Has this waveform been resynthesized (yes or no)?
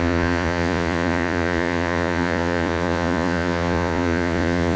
yes